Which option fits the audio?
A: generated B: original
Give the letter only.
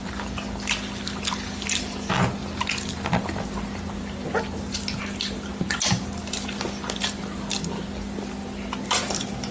B